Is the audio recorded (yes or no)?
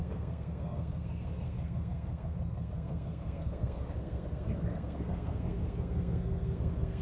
no